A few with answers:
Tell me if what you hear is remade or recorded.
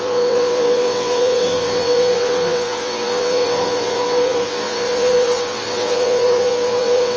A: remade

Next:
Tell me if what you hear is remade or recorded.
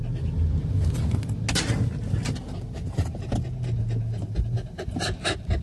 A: recorded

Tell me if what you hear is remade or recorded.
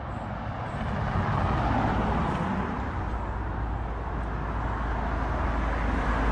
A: recorded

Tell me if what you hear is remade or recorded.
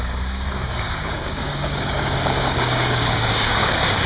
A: remade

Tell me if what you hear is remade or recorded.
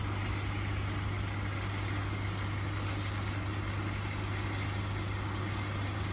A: recorded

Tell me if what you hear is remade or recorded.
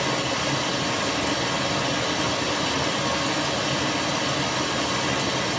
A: recorded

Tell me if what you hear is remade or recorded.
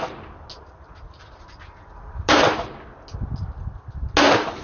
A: recorded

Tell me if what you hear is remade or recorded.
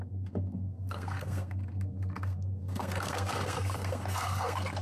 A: remade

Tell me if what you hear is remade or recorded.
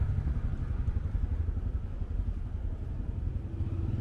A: recorded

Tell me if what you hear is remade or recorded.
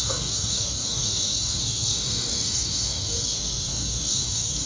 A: remade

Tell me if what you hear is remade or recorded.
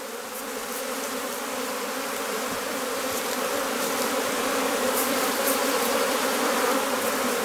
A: remade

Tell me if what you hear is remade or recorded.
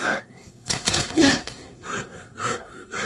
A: remade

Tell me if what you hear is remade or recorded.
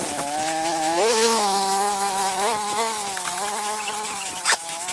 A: remade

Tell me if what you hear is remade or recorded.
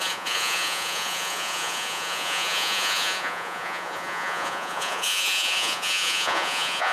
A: remade